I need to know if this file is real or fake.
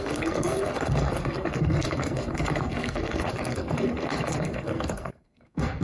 fake